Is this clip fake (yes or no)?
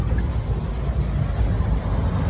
no